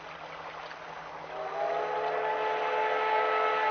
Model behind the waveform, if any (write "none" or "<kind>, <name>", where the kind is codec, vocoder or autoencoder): none